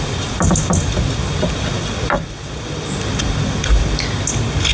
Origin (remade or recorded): recorded